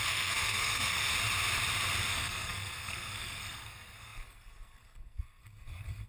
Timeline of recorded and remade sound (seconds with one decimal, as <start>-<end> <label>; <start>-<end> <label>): 0.0-1.1 remade; 1.1-2.1 recorded; 2.1-6.1 remade